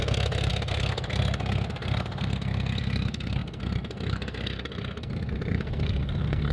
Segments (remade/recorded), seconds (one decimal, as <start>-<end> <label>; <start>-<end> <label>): 0.0-6.5 remade